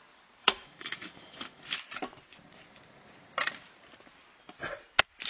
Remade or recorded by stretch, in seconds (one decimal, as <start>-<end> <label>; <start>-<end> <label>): 0.0-0.4 recorded; 0.4-1.6 remade; 1.6-5.3 recorded